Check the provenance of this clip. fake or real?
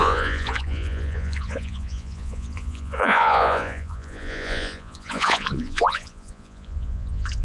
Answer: fake